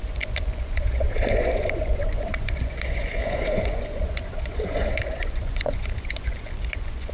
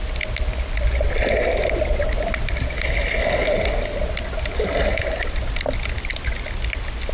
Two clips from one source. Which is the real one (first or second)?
second